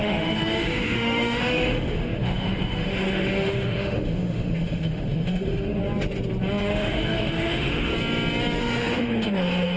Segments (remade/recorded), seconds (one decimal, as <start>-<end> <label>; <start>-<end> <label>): 0.0-5.8 remade; 5.8-6.6 recorded; 6.6-7.9 remade; 7.9-8.6 recorded; 8.6-9.8 remade